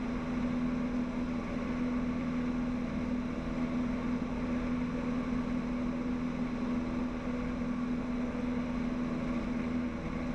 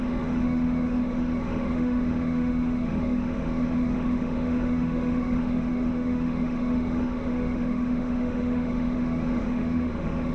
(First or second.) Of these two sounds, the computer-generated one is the second